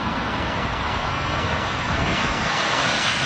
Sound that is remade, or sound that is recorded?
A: remade